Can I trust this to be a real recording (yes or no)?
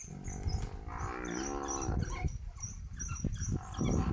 yes